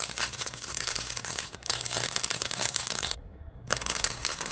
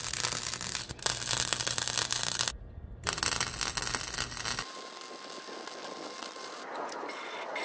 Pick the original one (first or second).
second